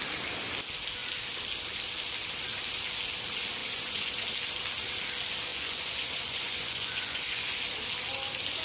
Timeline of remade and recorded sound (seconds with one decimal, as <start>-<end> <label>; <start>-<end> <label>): 0.0-3.6 recorded; 3.6-4.1 remade; 4.1-5.5 recorded; 5.5-7.6 remade; 7.6-8.6 recorded